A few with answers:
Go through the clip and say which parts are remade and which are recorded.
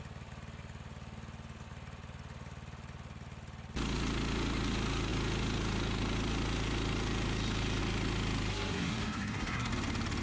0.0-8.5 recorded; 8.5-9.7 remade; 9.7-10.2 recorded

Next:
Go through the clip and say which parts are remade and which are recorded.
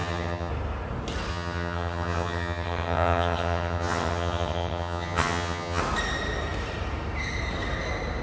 0.0-0.5 remade; 0.5-1.3 recorded; 1.3-5.8 remade; 5.8-8.2 recorded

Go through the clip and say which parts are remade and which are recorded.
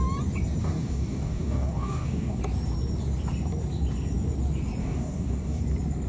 0.0-0.6 recorded; 0.6-2.4 remade; 2.4-4.8 recorded; 4.8-5.6 remade; 5.6-6.1 recorded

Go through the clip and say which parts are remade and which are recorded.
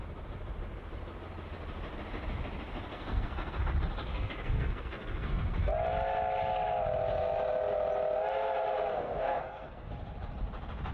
0.0-2.9 recorded; 2.9-3.6 remade; 3.6-4.1 recorded; 4.1-5.6 remade; 5.6-8.9 recorded; 8.9-9.9 remade; 9.9-10.9 recorded